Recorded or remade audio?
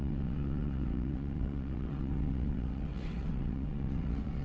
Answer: remade